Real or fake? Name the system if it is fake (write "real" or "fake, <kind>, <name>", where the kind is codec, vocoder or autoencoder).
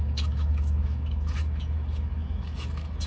fake, autoencoder, DAC-VAE